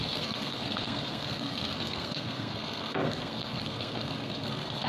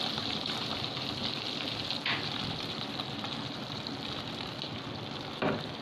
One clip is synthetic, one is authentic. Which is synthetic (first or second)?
first